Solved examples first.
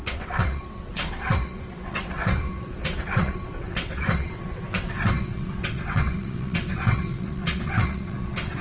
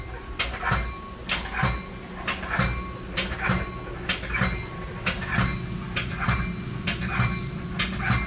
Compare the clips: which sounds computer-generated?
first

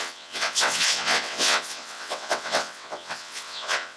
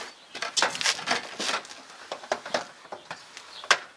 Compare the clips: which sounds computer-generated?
first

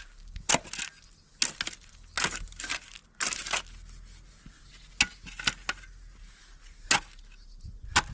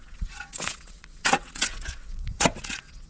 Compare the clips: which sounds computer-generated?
second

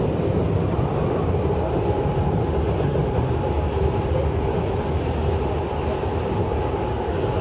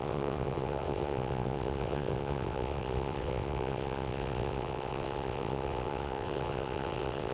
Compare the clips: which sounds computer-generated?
second